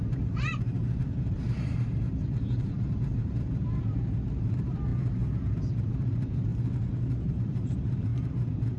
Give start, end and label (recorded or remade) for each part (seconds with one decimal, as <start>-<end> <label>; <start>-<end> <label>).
0.0-4.9 remade; 4.9-5.5 recorded; 5.5-6.5 remade; 6.5-7.3 recorded; 7.3-8.8 remade